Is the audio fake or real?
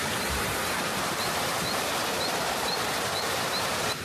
fake